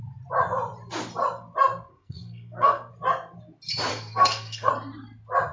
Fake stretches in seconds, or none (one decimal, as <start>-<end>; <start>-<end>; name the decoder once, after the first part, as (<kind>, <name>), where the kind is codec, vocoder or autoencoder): 1.9-2.9 (codec, SNAC); 3.9-4.7

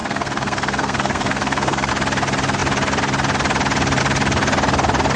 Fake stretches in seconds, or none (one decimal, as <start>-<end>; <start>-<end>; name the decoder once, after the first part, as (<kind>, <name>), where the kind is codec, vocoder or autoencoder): 0.0-1.9 (codec, SNAC)

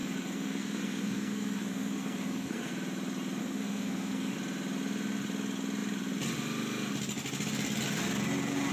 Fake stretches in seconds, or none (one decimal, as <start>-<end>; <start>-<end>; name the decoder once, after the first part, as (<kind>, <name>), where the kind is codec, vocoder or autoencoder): 0.0-2.7 (codec, SNAC); 3.4-4.3

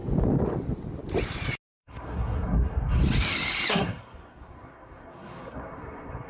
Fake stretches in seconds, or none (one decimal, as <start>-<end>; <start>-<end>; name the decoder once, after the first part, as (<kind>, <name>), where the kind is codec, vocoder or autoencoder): 1.8-3.0 (codec, SNAC); 3.7-6.3